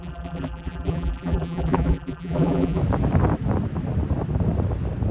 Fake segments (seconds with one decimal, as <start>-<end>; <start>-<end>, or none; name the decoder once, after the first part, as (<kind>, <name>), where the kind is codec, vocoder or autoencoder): 0.0-2.8 (vocoder, BigVGAN v2)